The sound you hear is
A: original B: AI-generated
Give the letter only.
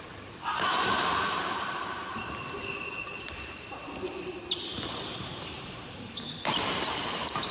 B